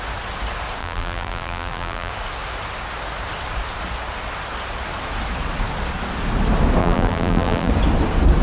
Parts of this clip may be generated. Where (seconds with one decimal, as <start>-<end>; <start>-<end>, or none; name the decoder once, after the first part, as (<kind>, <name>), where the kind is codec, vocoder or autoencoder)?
0.8-2.1 (vocoder, BigVGAN v2); 6.8-7.7